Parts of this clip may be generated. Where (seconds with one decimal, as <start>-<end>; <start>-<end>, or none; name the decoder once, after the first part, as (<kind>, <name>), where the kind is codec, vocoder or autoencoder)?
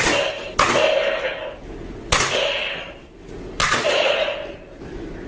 3.6-4.2 (vocoder, Vocos)